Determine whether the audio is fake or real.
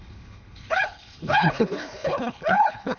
fake